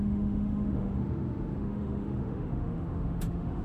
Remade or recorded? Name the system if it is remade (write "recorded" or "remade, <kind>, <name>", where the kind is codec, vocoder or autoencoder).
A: remade, autoencoder, DAC-VAE